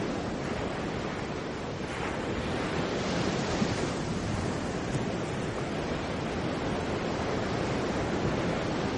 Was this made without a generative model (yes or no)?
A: yes